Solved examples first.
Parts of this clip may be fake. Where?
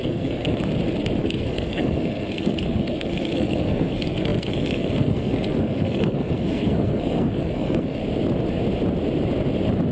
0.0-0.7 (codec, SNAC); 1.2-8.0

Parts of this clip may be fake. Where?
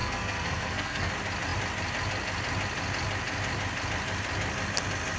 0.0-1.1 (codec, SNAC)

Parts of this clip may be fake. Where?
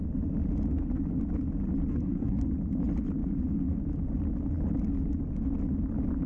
1.9-2.5 (codec, SNAC)